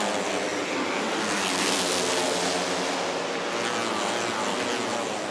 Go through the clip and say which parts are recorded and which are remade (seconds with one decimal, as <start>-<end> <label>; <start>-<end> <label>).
0.0-5.3 recorded